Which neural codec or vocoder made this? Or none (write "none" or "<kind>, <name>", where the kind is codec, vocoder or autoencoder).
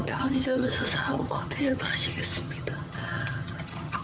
vocoder, HiFi-GAN